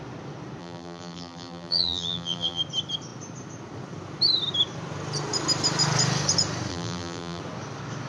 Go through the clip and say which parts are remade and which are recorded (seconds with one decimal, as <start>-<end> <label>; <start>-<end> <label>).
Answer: 0.0-0.6 recorded; 0.6-2.6 remade; 2.6-6.7 recorded; 6.7-7.4 remade; 7.4-8.1 recorded